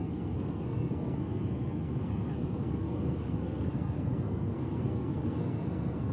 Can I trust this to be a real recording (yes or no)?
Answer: no